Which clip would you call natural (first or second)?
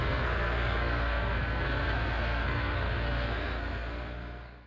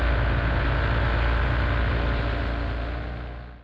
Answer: second